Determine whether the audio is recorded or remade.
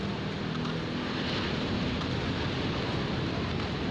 recorded